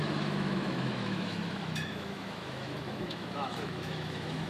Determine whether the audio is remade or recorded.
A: remade